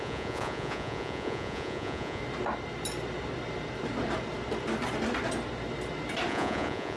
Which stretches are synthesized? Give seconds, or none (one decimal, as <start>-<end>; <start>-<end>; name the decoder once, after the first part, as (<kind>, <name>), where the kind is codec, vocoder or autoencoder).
0.0-2.2 (vocoder, Vocos); 6.3-7.0